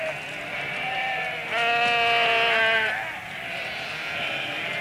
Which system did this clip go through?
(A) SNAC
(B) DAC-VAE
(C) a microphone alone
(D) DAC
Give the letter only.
C